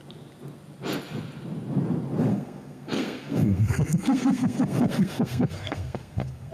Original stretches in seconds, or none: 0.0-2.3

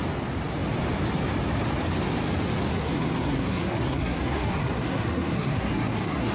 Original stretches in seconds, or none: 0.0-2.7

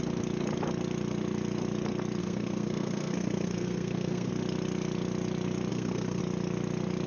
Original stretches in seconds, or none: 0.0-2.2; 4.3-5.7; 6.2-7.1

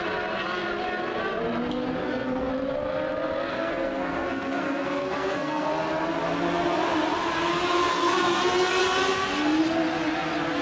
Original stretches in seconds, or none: 0.0-2.0; 2.5-3.5; 5.7-7.9; 8.8-10.6

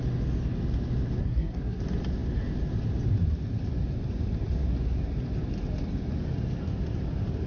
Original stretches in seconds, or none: 0.0-1.2; 1.8-7.5

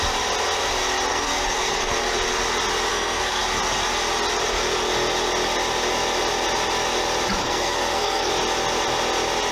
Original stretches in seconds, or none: 0.0-1.1; 1.9-2.9; 3.4-7.4; 8.3-9.5